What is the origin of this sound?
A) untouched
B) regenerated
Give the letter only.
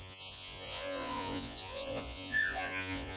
B